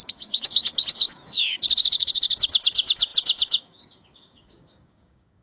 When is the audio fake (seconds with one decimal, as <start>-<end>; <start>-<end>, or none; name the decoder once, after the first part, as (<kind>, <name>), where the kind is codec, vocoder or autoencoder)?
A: 0.0-5.4 (codec, DAC)